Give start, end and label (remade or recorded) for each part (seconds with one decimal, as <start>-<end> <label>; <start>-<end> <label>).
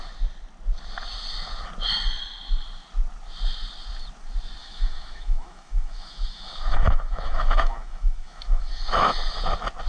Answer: 0.0-4.6 recorded; 4.6-9.4 remade; 9.4-9.9 recorded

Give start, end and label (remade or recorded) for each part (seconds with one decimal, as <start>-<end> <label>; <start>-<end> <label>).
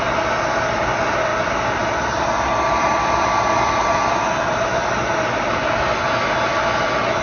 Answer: 0.0-7.2 recorded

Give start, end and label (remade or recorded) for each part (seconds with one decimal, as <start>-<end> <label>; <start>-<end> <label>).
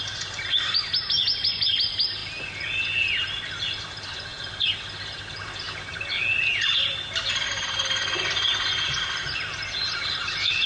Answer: 0.0-10.7 recorded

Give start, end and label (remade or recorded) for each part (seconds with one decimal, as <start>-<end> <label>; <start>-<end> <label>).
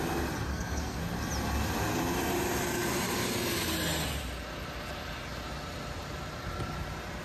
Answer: 0.0-0.5 recorded; 0.5-1.0 remade; 1.0-7.2 recorded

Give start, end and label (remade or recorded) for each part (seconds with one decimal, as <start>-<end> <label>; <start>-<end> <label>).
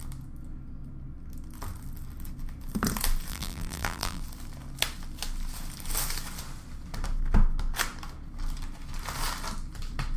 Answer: 0.0-3.3 recorded; 3.3-4.2 remade; 4.2-10.2 recorded